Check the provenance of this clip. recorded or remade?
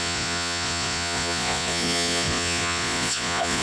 remade